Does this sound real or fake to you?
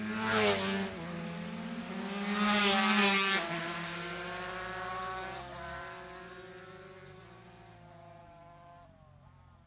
real